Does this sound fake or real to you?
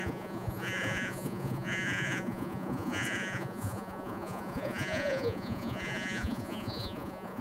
fake